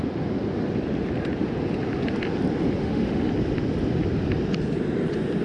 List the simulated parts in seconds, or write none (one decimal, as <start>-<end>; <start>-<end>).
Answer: 2.8-3.3